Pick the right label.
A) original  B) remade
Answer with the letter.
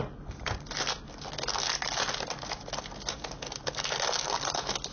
A